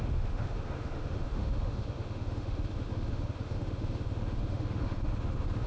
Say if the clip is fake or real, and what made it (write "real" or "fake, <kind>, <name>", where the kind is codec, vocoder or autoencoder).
fake, autoencoder, DAC-VAE